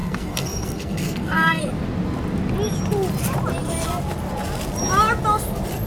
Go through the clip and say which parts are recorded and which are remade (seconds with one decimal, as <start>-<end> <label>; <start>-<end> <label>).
0.0-1.7 remade; 1.7-5.9 recorded

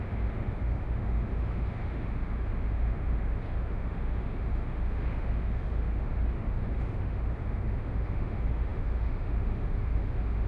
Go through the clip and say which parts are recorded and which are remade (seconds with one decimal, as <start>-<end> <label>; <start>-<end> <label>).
0.0-10.5 remade

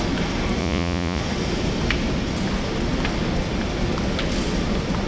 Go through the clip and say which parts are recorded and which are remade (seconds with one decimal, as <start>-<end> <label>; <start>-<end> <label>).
0.0-0.6 recorded; 0.6-1.2 remade; 1.2-5.1 recorded